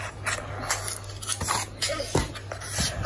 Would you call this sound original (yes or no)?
yes